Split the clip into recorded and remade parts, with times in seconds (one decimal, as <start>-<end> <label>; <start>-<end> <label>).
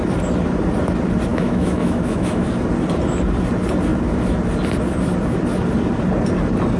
0.0-1.3 recorded; 1.3-2.5 remade; 2.5-6.8 recorded